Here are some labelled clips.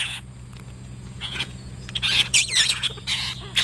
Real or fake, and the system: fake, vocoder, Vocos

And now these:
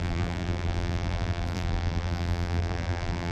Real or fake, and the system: fake, vocoder, BigVGAN v2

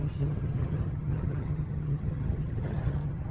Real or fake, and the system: fake, vocoder, HiFi-GAN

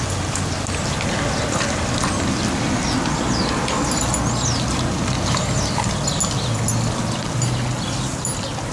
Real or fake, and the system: real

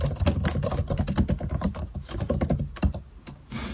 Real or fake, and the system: real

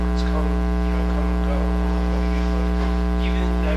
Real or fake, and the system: real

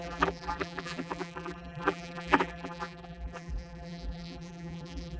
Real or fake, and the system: fake, vocoder, BigVGAN v2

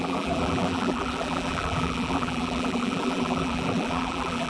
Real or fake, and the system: fake, vocoder, BigVGAN v2